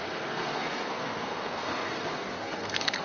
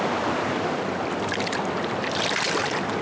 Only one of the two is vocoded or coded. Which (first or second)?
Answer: first